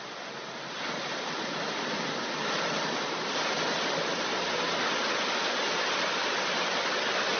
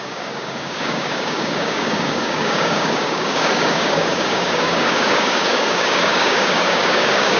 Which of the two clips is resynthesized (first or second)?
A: second